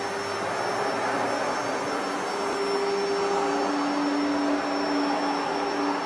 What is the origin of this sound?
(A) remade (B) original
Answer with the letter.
B